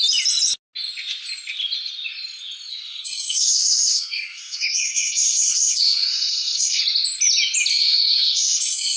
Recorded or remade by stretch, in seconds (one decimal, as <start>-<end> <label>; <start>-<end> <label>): 0.0-2.7 recorded; 2.7-6.8 remade; 6.8-7.7 recorded; 7.7-9.0 remade